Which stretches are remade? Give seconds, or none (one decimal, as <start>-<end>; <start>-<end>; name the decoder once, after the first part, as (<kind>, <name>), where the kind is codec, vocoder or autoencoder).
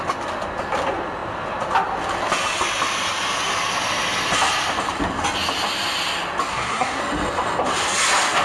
6.5-7.0 (codec, SNAC)